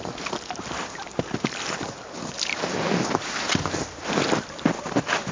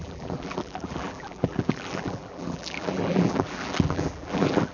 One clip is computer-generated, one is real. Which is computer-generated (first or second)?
second